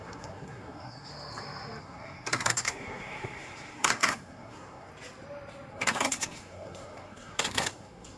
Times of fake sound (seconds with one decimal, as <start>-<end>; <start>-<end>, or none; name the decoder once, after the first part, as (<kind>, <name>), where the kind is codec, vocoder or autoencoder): 0.0-1.1 (codec, SNAC); 1.8-4.9; 5.7-8.2